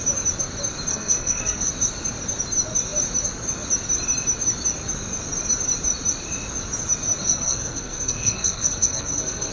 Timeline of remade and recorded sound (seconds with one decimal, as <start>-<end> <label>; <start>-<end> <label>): 0.0-0.9 recorded; 0.9-1.7 remade; 1.7-7.2 recorded; 7.2-9.5 remade